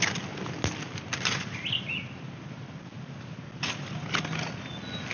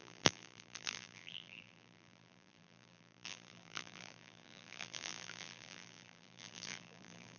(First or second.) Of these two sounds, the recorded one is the first